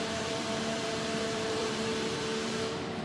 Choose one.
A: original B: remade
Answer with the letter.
B